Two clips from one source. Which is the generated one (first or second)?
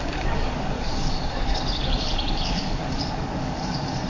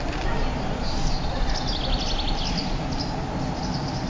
first